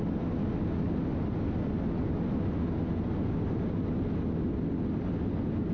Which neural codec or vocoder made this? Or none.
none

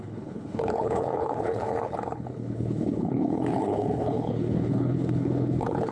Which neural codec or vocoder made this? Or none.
codec, HILCodec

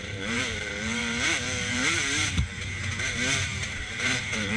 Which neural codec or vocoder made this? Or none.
vocoder, BigVGAN v2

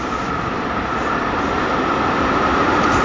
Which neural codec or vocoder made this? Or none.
vocoder, BigVGAN v2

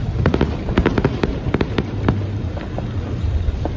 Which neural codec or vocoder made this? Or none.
none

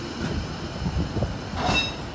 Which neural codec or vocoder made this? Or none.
none